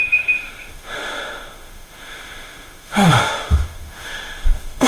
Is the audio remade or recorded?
remade